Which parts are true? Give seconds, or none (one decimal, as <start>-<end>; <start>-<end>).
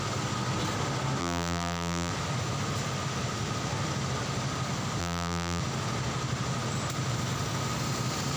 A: 0.0-1.2; 2.1-5.0; 5.6-8.4